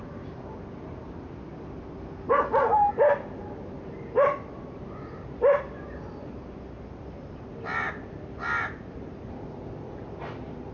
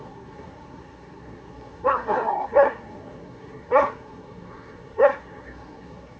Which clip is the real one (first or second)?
first